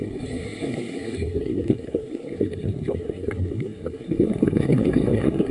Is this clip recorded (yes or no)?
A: no